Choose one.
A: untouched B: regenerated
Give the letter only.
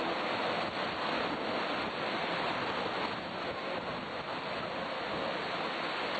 A